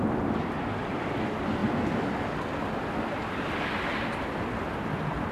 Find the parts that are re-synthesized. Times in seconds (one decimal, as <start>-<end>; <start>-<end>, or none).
none